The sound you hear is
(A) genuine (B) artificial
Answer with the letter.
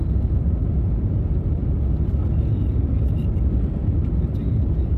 A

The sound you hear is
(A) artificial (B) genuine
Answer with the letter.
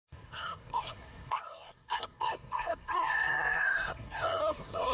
A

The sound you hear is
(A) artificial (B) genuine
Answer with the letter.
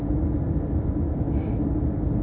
B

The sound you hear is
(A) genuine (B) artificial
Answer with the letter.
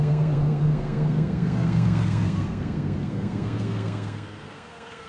B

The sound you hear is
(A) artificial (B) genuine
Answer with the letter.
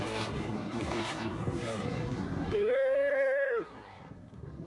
A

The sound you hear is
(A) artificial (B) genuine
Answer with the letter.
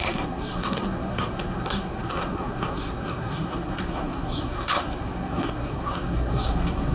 A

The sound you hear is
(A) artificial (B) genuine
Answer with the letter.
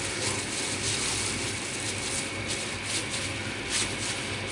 B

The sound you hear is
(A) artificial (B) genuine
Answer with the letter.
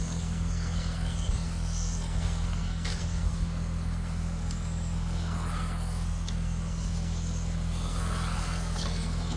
A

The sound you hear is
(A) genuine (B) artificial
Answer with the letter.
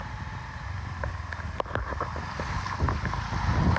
A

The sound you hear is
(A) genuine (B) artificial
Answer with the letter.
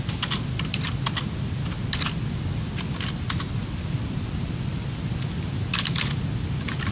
A